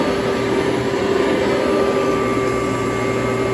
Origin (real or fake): real